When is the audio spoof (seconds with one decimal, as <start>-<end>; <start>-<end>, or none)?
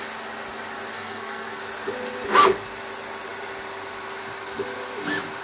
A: 0.9-1.6